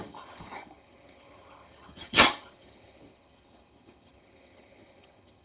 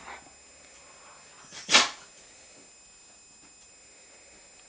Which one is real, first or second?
second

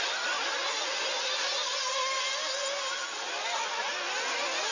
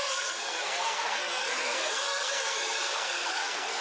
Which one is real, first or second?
first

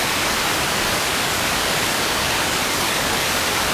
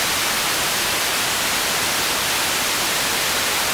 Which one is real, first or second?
second